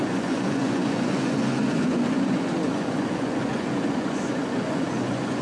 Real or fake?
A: fake